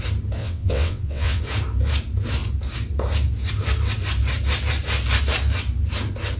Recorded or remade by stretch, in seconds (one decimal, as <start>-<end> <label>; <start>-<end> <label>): 0.0-0.4 recorded; 0.4-1.4 remade; 1.4-6.4 recorded

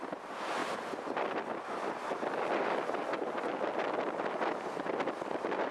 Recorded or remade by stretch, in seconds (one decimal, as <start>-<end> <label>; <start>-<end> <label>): 0.0-5.7 recorded

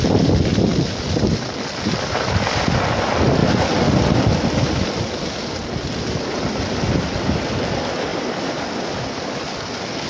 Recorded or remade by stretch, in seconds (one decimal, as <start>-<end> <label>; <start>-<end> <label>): 0.0-10.1 recorded

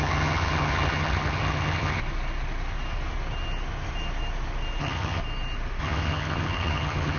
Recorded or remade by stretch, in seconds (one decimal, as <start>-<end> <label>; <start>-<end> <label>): 0.0-2.0 remade; 2.0-4.8 recorded; 4.8-5.2 remade; 5.2-5.8 recorded; 5.8-7.2 remade

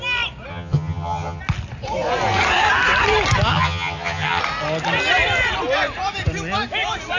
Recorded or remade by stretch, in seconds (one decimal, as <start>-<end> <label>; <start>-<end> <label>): 0.0-0.5 recorded; 0.5-1.4 remade; 1.4-3.5 recorded; 3.5-4.4 remade; 4.4-7.2 recorded

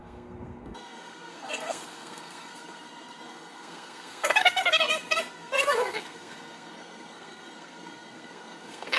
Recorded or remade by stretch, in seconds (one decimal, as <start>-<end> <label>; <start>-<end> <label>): 0.0-9.0 remade

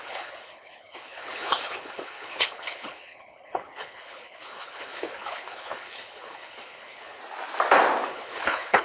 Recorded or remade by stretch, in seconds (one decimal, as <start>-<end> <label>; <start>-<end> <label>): 0.0-7.2 remade; 7.2-8.1 recorded; 8.1-8.8 remade

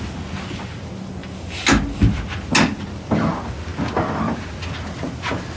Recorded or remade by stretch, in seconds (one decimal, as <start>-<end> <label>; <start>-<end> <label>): 0.0-5.6 recorded